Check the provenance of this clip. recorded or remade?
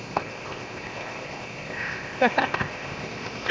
remade